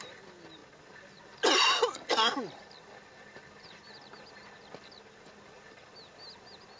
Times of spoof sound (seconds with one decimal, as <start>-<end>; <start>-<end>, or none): none